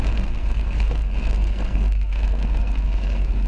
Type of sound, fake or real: fake